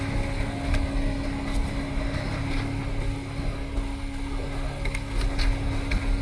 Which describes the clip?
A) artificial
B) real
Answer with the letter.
B